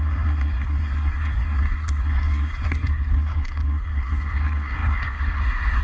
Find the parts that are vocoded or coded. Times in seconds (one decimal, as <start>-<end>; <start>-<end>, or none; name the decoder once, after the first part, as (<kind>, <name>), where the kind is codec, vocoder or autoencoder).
0.0-5.8 (codec, SNAC)